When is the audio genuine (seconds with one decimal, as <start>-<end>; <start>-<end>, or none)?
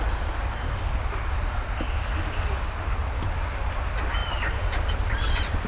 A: 0.0-3.0; 3.6-4.2